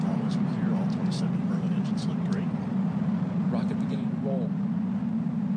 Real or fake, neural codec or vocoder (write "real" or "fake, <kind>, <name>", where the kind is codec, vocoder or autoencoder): fake, vocoder, BigVGAN v2